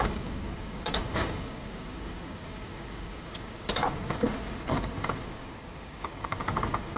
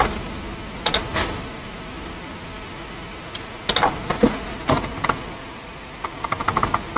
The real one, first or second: second